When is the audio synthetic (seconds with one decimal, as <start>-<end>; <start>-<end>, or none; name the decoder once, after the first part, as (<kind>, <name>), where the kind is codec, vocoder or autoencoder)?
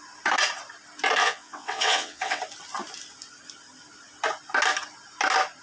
1.2-2.4 (vocoder, WaveNeXt)